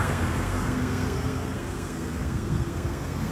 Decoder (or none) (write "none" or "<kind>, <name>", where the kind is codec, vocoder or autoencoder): codec, SNAC